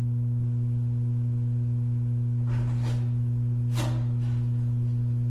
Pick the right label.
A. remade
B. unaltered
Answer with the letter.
B